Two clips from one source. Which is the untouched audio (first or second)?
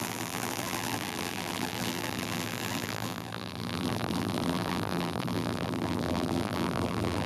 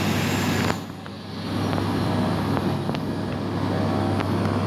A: second